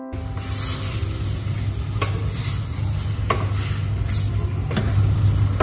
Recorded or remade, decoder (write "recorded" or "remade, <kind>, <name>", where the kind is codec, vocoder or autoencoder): recorded